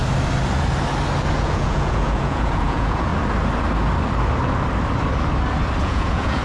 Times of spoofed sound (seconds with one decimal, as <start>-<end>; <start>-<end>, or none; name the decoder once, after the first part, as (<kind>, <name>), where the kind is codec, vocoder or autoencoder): 1.3-3.1 (vocoder, Vocos); 5.8-6.4